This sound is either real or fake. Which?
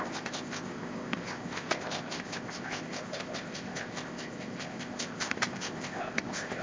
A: fake